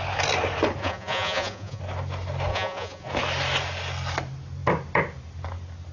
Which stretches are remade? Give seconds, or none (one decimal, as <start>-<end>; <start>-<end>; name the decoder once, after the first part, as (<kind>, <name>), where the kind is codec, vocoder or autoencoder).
0.8-1.8 (vocoder, Vocos); 2.5-3.1